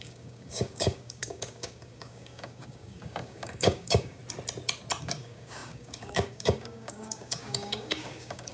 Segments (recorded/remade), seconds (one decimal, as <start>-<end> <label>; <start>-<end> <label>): 0.0-4.2 remade; 4.2-5.0 recorded; 5.0-8.5 remade